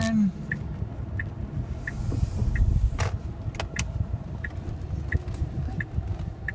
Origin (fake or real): real